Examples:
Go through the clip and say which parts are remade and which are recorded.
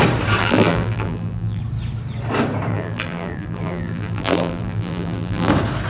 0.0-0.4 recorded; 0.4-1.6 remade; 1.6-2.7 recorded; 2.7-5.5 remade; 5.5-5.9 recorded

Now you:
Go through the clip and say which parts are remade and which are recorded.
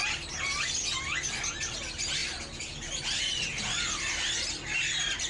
0.0-1.6 recorded; 1.6-2.2 remade; 2.2-5.3 recorded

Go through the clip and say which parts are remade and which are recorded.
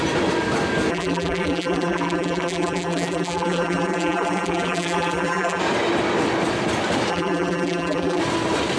0.0-0.9 recorded; 0.9-5.6 remade; 5.6-7.1 recorded; 7.1-8.2 remade; 8.2-8.8 recorded